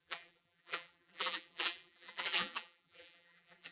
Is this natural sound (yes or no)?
no